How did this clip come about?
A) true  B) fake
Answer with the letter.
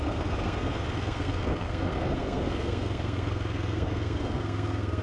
B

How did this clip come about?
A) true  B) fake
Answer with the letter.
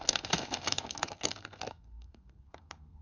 B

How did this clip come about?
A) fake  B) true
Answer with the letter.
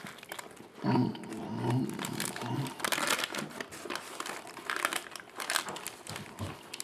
B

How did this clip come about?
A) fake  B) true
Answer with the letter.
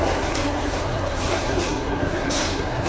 A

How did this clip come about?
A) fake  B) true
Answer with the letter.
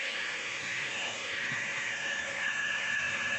A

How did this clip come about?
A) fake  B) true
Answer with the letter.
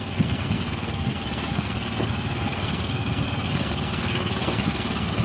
A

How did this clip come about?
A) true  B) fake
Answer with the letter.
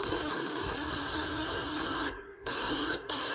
B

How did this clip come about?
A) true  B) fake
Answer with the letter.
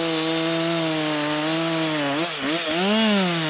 A